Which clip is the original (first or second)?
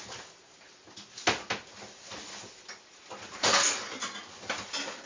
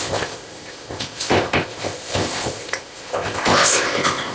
first